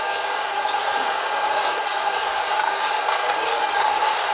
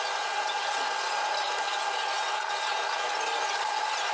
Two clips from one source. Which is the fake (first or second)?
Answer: first